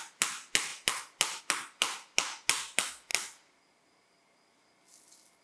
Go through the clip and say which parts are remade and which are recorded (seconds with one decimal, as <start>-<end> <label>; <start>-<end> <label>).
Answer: 0.0-5.4 recorded